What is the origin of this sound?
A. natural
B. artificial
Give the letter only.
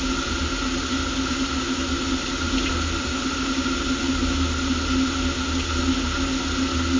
A